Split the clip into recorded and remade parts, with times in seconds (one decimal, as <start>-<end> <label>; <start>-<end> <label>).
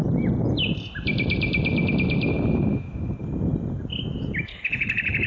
0.0-4.5 recorded; 4.5-5.3 remade